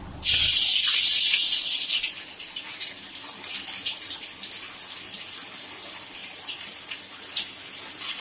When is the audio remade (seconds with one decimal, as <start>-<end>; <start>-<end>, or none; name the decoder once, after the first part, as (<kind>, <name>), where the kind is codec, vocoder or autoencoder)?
6.2-7.0 (vocoder, BigVGAN v2)